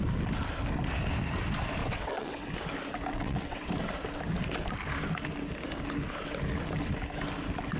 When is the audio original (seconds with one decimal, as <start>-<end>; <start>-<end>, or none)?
0.0-1.8; 2.5-3.1; 3.7-7.8